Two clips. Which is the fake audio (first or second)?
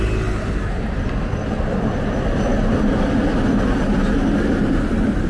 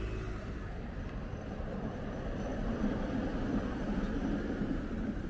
second